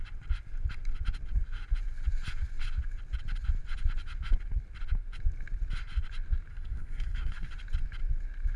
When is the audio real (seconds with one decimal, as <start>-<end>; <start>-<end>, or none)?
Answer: 0.0-6.5; 7.5-8.6